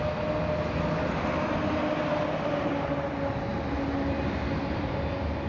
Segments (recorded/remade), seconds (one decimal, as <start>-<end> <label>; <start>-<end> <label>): 0.0-5.5 recorded